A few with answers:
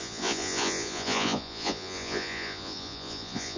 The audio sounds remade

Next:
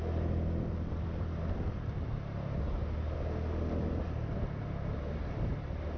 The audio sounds recorded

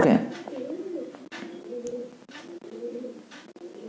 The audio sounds recorded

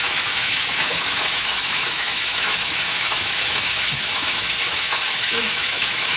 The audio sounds remade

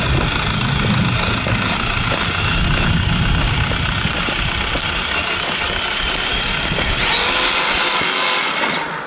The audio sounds recorded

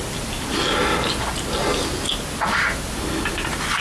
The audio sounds recorded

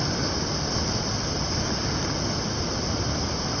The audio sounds recorded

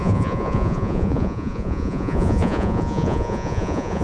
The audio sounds remade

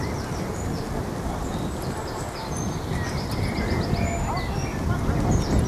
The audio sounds recorded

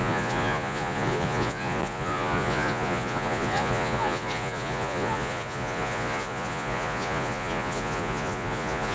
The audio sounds remade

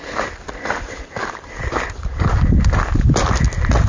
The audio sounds recorded